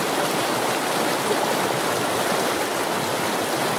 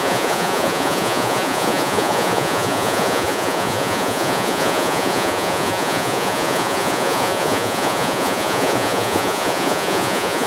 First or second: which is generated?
second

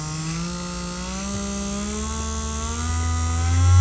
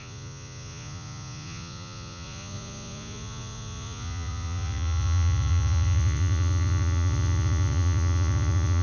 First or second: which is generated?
second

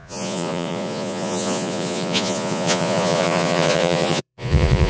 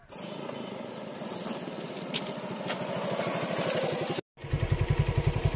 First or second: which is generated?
first